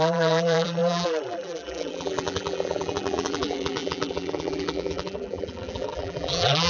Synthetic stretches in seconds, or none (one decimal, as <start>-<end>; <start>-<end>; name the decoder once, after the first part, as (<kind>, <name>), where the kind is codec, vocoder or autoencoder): 0.0-6.7 (vocoder, BigVGAN v2)